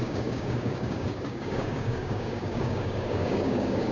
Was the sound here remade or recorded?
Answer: remade